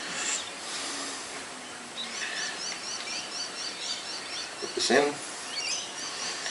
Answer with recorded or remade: remade